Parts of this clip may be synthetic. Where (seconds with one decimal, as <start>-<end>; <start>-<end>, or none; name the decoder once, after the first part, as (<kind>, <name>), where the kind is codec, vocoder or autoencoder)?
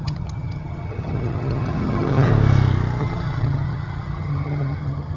0.0-2.3 (vocoder, HiFi-GAN); 3.0-5.2